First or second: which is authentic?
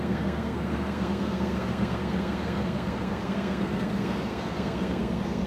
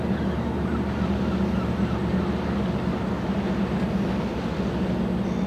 second